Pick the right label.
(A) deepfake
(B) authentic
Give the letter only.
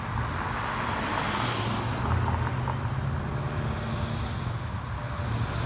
B